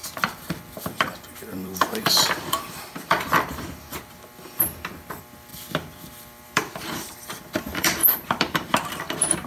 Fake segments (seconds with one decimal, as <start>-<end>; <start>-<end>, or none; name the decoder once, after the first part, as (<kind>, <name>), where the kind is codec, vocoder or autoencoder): 0.0-9.5 (vocoder, BigVGAN v2)